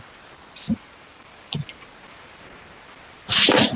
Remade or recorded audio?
recorded